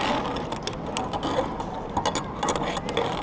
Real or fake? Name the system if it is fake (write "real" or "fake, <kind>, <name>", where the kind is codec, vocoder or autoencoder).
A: real